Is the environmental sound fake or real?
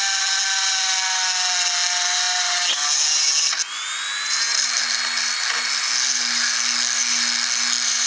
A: real